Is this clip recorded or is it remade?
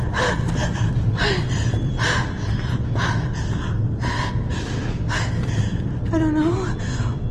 recorded